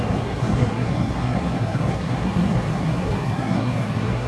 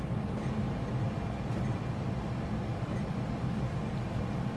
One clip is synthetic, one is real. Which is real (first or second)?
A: second